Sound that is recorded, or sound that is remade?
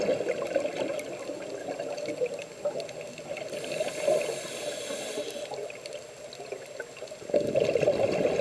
recorded